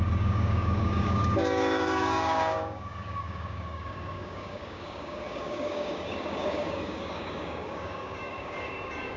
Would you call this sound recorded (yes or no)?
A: no